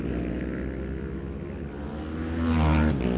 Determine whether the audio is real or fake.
real